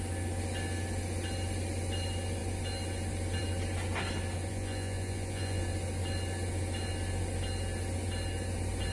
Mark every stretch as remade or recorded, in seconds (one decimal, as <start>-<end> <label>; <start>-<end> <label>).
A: 0.0-4.5 recorded; 4.5-5.6 remade; 5.6-8.9 recorded